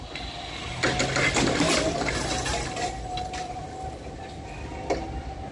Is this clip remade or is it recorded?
recorded